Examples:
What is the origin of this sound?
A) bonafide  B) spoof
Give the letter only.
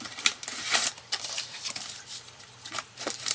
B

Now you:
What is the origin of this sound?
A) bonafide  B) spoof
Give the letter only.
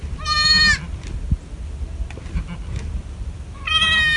A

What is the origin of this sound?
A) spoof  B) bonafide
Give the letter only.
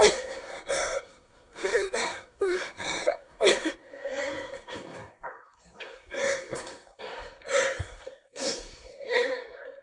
A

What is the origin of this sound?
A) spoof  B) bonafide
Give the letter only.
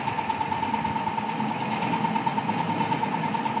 B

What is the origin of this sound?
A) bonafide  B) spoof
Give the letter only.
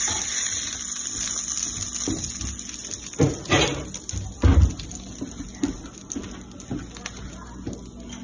A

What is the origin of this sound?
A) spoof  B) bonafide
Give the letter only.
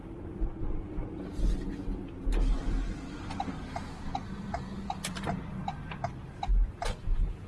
B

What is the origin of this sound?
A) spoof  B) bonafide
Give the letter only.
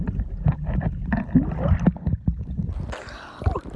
B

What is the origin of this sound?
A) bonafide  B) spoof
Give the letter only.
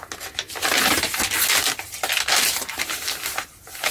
A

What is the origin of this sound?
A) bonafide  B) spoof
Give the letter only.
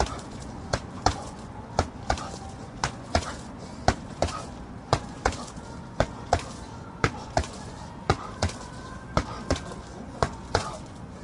B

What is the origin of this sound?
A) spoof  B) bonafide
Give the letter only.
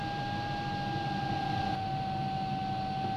B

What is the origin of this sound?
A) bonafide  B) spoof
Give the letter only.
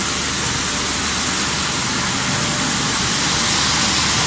A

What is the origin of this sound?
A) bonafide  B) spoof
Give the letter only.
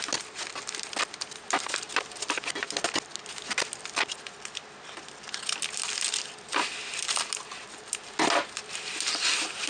A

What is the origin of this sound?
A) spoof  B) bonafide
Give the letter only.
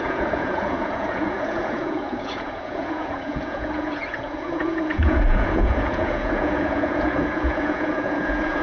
A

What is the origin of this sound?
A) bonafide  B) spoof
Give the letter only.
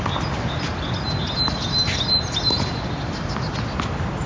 A